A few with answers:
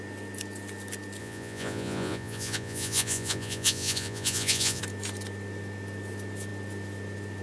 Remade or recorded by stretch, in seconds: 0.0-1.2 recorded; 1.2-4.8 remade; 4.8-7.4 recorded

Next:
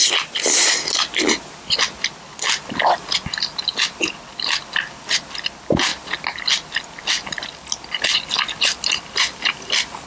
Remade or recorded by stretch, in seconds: 0.0-10.1 recorded

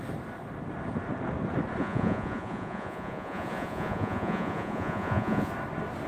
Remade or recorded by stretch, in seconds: 0.0-1.8 recorded; 1.8-5.5 remade; 5.5-6.1 recorded

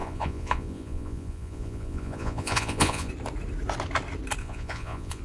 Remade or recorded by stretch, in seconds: 0.0-3.1 remade; 3.1-4.4 recorded; 4.4-5.2 remade